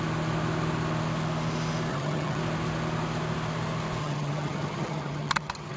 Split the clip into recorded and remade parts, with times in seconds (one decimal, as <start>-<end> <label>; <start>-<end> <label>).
0.0-1.9 recorded; 1.9-2.4 remade; 2.4-4.0 recorded; 4.0-5.8 remade